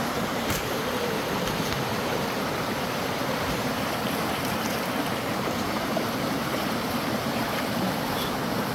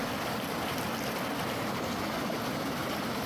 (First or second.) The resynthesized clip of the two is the first